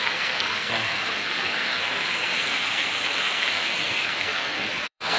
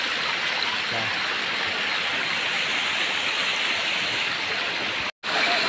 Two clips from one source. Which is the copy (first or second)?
first